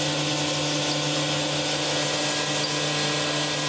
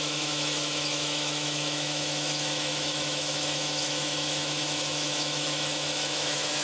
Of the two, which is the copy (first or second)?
second